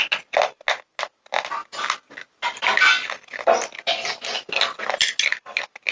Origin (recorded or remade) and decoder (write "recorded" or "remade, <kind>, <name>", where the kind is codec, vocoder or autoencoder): recorded